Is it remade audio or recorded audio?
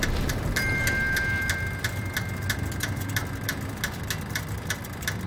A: recorded